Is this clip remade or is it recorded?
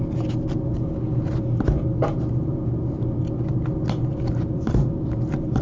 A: recorded